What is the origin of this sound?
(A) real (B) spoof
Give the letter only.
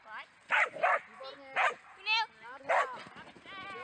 A